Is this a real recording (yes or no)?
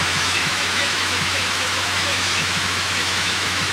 no